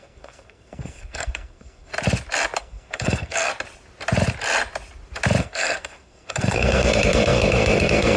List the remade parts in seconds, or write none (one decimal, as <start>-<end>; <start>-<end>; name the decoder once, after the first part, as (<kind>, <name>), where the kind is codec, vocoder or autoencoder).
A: 0.0-1.9 (codec, SNAC); 2.6-3.5; 5.4-8.2